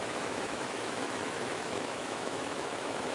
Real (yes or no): no